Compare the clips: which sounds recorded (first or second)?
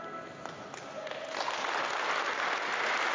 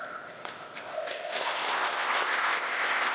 first